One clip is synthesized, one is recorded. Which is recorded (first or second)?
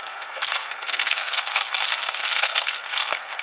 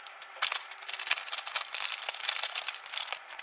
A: second